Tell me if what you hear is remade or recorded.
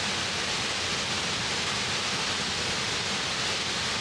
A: recorded